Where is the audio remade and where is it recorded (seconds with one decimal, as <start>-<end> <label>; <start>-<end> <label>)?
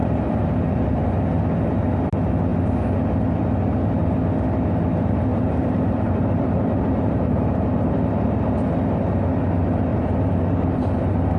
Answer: 0.0-0.8 remade; 0.8-5.3 recorded; 5.3-8.5 remade; 8.5-9.9 recorded; 9.9-11.0 remade; 11.0-11.4 recorded